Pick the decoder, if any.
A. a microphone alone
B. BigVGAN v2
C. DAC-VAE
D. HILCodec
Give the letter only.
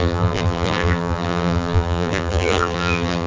B